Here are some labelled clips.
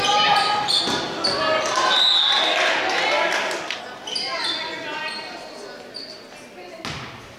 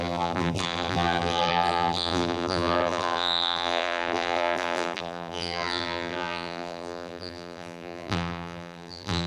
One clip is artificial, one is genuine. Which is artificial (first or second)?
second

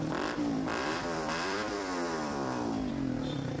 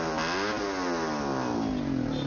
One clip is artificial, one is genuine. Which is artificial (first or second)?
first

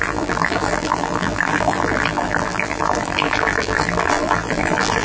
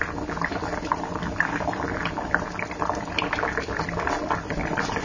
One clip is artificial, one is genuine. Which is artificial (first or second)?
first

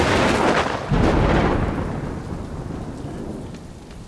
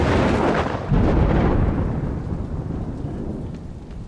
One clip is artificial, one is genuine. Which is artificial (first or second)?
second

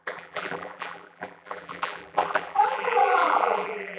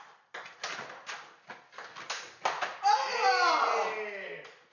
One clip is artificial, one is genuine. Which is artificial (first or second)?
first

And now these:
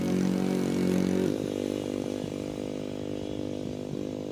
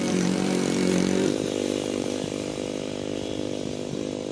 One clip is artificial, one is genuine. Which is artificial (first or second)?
second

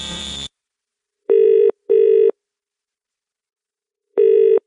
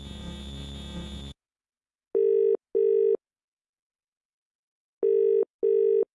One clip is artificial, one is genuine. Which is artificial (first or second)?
first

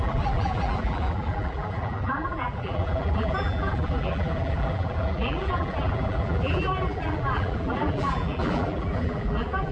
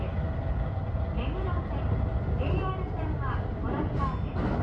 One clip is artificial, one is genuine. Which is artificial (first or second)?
first